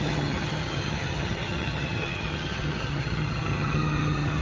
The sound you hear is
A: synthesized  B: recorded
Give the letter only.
A